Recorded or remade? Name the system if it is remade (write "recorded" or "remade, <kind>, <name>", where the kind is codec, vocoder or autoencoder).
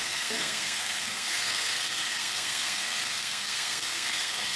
remade, codec, SNAC